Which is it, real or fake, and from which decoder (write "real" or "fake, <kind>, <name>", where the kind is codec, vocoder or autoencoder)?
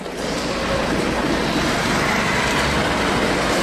real